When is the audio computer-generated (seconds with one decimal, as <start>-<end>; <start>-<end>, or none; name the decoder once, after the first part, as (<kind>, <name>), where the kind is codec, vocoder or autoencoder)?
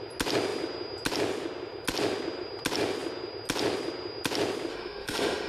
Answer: 4.7-5.5 (autoencoder, DAC-VAE)